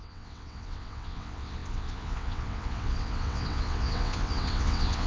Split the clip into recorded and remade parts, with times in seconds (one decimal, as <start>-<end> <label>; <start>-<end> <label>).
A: 0.0-5.1 remade